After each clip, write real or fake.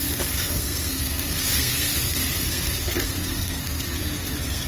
fake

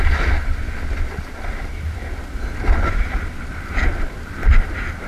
real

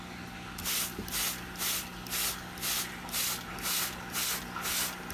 real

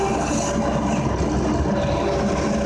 real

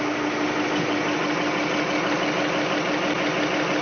real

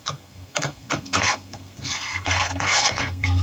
fake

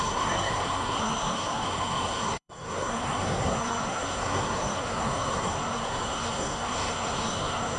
fake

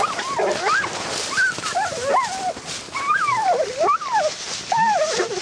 real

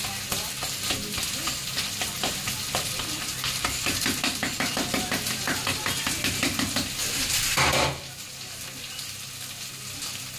real